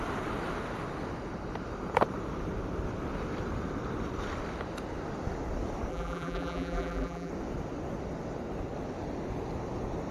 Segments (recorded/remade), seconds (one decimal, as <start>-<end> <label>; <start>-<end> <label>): 0.0-5.9 recorded; 5.9-7.3 remade; 7.3-10.1 recorded

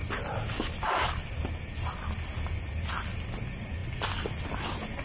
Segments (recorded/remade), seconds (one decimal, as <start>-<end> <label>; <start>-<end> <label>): 0.0-5.0 recorded